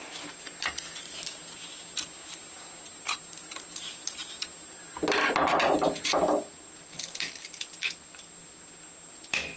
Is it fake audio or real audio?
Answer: real